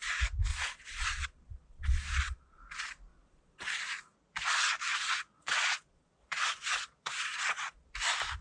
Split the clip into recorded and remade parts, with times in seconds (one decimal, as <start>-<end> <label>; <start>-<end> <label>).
0.0-0.5 recorded; 0.5-2.6 remade; 2.6-3.1 recorded; 3.1-3.8 remade; 3.8-4.9 recorded; 4.9-7.9 remade; 7.9-8.4 recorded